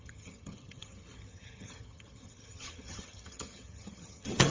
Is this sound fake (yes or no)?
yes